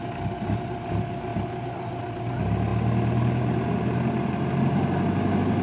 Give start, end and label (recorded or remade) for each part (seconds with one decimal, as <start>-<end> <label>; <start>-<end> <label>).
0.0-5.6 recorded